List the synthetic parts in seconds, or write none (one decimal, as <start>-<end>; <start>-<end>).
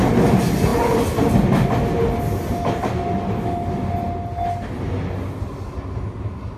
none